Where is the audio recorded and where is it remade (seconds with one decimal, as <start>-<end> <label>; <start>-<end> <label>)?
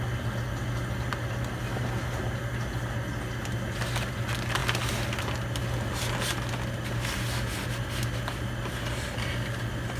0.0-10.0 recorded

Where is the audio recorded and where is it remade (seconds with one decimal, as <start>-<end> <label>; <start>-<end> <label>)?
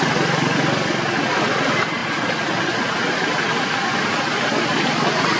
0.0-5.4 recorded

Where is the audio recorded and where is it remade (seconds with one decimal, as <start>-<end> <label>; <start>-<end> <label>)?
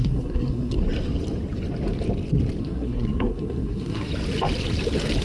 0.0-0.8 remade; 0.8-2.6 recorded; 2.6-4.1 remade; 4.1-5.2 recorded